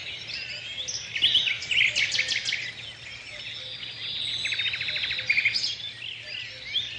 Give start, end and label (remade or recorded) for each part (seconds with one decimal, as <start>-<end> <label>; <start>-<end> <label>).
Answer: 0.0-1.1 remade; 1.1-7.0 recorded